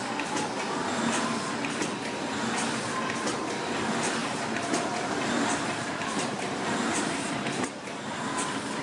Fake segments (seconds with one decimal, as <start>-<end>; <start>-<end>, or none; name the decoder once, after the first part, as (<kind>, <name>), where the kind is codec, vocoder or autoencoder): 4.2-8.0 (vocoder, BigVGAN v2)